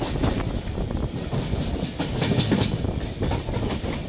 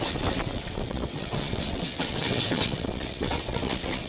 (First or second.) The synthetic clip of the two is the second